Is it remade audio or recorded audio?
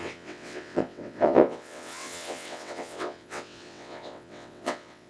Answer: remade